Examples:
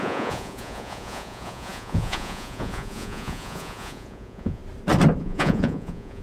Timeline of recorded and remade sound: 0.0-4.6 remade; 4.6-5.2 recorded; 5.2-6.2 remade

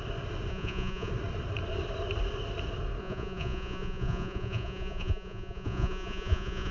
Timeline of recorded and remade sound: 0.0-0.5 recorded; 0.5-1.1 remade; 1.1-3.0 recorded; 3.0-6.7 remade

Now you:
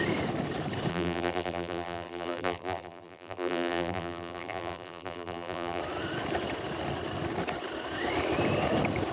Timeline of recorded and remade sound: 0.0-0.9 recorded; 0.9-5.8 remade; 5.8-9.1 recorded

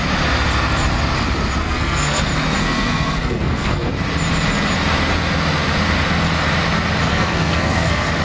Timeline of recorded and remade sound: 0.0-1.6 recorded; 1.6-2.2 remade; 2.2-2.6 recorded; 2.6-3.9 remade; 3.9-7.1 recorded; 7.1-8.2 remade

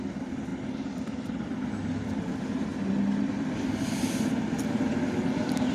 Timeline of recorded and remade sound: 0.0-5.7 recorded